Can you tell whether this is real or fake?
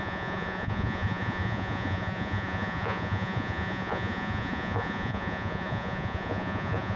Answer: fake